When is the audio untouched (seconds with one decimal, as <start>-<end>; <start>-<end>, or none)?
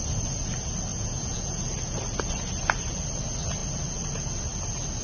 0.0-0.9; 1.6-5.0